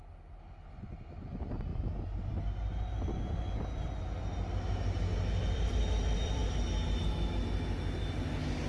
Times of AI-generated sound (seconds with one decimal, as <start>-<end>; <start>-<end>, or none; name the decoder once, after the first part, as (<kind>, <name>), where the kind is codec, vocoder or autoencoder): 5.4-6.4 (vocoder, BigVGAN v2)